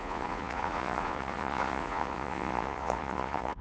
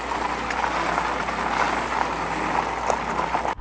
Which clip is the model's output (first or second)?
first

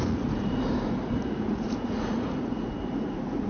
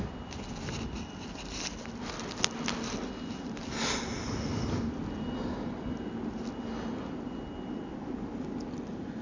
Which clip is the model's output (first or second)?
first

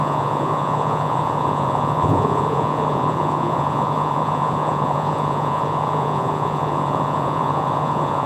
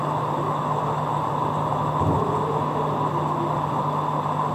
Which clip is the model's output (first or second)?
first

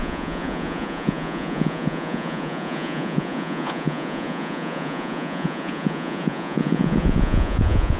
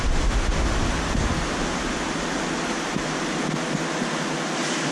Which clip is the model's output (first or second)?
first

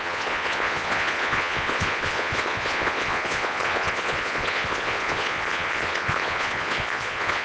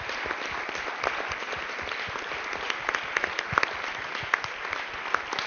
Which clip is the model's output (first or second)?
first